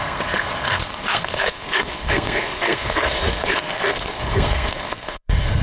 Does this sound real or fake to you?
fake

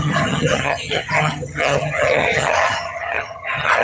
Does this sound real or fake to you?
fake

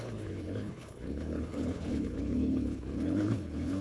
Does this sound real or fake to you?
fake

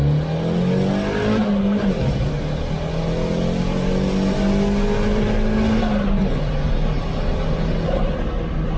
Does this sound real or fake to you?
real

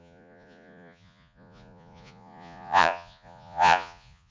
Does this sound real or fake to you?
fake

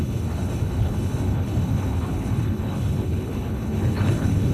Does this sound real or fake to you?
fake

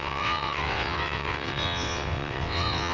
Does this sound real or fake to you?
fake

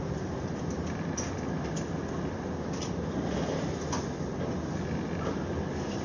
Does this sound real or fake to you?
real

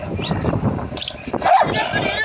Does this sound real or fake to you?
fake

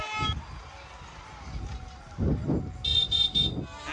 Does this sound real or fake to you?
real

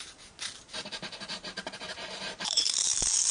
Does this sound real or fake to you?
fake